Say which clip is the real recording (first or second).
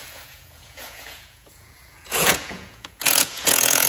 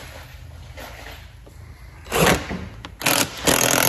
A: second